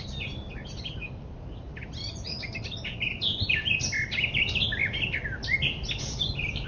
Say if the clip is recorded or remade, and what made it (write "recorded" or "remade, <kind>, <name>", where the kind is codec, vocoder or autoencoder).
recorded